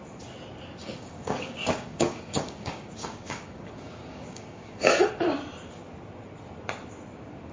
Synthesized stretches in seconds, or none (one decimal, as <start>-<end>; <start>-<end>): 0.8-5.1